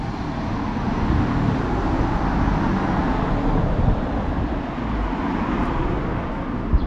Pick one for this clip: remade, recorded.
recorded